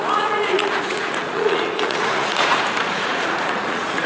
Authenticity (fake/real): fake